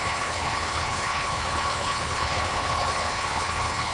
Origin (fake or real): fake